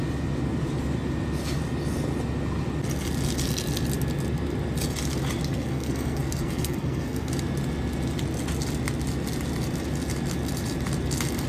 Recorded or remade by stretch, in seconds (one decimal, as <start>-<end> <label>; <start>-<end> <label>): 0.0-5.5 recorded; 5.5-7.3 remade; 7.3-11.5 recorded